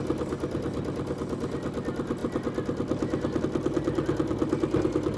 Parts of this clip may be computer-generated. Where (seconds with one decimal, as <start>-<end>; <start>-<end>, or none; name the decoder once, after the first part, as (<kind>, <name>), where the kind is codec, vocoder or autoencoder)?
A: none